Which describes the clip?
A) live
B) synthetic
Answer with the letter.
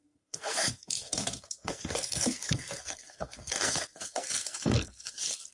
B